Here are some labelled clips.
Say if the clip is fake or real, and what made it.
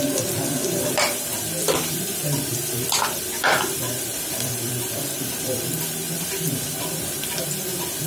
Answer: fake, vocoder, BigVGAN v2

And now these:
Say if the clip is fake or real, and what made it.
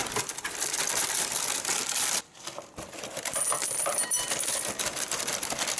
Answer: fake, vocoder, BigVGAN v2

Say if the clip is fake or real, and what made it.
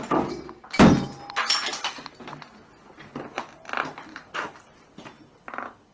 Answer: real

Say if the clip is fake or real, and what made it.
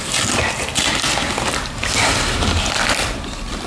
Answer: fake, vocoder, BigVGAN v2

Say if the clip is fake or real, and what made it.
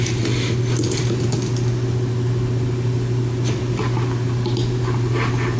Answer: real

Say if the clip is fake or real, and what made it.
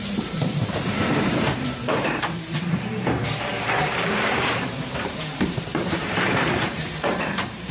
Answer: fake, vocoder, BigVGAN v2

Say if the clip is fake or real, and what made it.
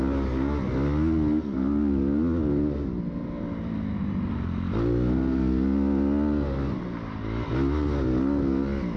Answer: real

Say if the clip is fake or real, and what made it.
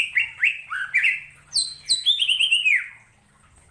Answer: real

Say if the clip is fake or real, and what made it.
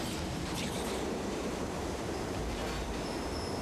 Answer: fake, vocoder, BigVGAN v2